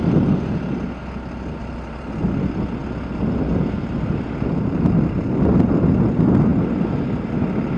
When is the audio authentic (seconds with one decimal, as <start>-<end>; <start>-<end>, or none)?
0.0-1.6; 2.2-7.8